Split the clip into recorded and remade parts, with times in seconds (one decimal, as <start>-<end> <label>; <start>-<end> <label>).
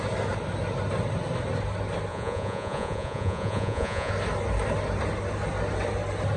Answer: 0.0-2.1 recorded; 2.1-4.1 remade; 4.1-6.4 recorded